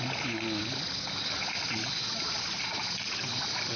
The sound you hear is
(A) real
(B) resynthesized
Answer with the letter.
A